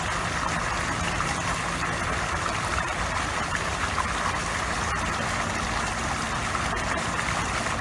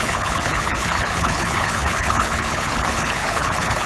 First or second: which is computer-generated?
second